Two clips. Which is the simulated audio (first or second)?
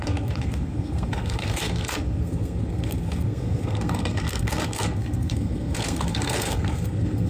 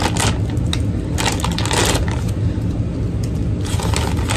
first